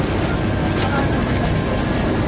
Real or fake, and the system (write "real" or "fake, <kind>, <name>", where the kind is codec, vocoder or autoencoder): real